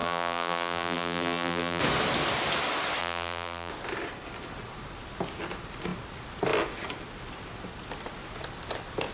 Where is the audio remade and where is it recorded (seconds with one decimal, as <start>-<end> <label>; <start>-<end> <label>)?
0.0-1.8 remade; 1.8-3.0 recorded; 3.0-3.7 remade; 3.7-9.1 recorded